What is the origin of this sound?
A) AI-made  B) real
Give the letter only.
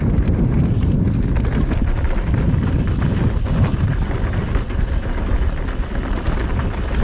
A